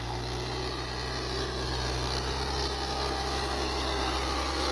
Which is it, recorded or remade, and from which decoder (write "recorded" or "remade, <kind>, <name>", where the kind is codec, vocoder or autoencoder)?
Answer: recorded